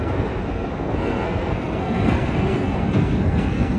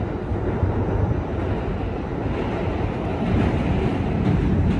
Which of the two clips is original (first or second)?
second